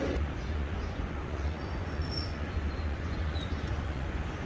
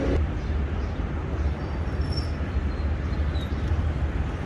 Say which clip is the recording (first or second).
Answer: second